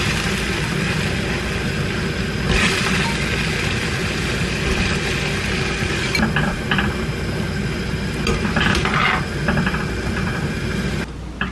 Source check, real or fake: real